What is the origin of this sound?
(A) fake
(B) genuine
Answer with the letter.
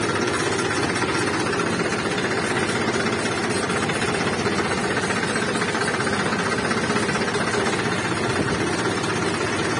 B